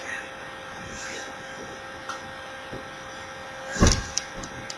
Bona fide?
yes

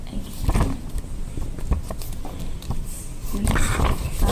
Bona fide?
yes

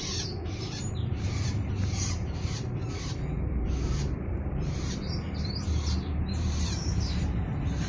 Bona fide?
no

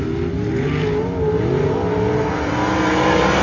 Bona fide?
yes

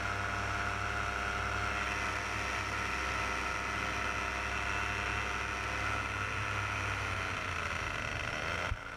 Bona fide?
yes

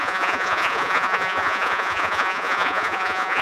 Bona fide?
no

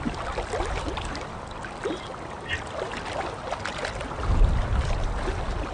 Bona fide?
yes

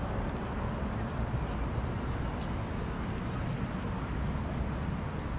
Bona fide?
yes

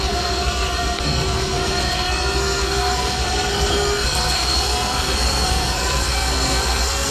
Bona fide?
no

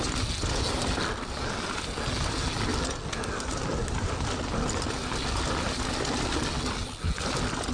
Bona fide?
yes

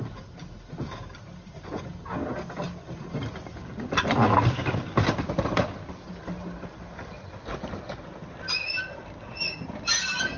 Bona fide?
yes